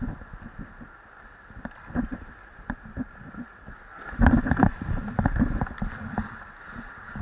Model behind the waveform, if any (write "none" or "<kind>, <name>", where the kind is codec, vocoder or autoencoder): none